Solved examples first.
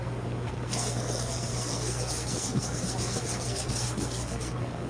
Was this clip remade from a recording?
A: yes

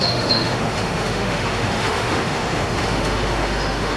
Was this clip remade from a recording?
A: yes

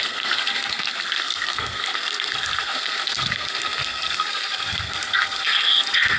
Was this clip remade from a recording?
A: yes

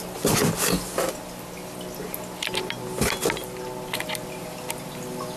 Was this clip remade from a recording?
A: no